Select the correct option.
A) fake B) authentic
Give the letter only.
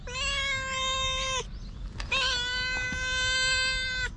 B